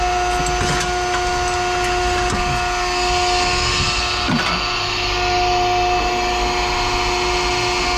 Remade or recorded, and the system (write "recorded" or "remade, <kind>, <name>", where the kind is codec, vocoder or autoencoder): recorded